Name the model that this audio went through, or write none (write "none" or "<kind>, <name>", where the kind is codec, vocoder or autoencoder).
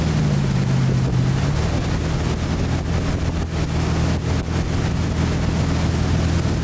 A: none